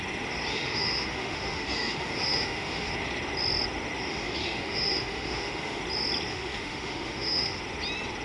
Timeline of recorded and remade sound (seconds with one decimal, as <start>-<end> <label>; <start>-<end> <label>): 0.0-0.5 recorded; 0.5-2.9 remade; 2.9-4.1 recorded; 4.1-5.8 remade; 5.8-6.3 recorded; 6.3-7.6 remade; 7.6-8.2 recorded